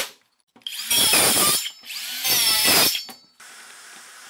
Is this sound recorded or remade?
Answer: remade